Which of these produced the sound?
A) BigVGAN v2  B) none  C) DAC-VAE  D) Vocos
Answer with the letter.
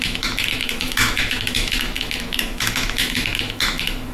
C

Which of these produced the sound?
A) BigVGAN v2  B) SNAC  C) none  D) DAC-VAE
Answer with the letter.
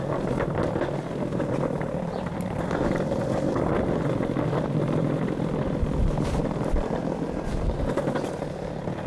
C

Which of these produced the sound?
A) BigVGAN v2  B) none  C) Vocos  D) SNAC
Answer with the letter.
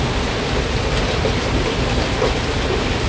A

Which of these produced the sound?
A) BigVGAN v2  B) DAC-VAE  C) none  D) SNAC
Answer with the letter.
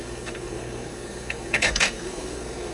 D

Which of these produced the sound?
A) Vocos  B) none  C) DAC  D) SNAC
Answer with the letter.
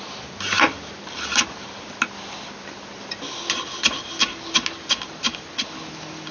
B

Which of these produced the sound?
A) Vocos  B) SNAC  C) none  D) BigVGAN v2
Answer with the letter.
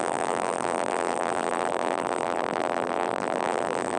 D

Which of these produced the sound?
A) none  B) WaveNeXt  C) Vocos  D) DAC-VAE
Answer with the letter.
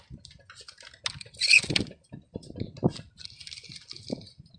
A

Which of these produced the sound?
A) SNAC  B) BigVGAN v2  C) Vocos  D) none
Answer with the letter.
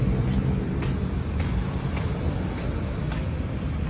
B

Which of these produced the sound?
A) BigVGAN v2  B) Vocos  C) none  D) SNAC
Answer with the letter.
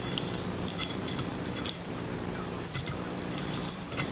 A